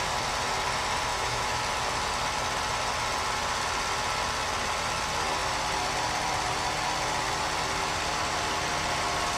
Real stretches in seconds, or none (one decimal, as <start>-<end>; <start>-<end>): 0.0-1.1; 1.6-9.4